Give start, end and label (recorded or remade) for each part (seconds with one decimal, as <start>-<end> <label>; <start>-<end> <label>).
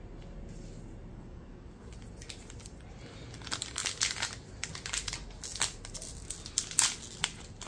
0.0-1.1 recorded; 1.1-1.9 remade; 1.9-7.7 recorded